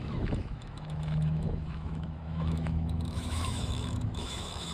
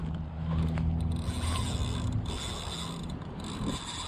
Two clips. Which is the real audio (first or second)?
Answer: second